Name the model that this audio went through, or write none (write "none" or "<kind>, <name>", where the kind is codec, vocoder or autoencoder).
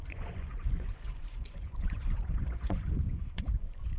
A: vocoder, Vocos